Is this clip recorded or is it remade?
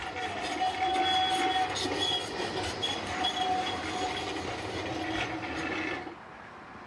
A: recorded